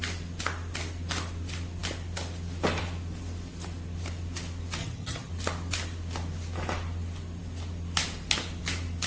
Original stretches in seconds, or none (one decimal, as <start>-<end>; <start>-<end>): 0.0-4.8; 5.3-9.1